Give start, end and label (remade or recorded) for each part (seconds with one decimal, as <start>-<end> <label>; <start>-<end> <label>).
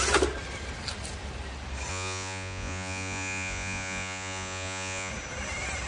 0.0-1.9 recorded; 1.9-5.1 remade; 5.1-5.9 recorded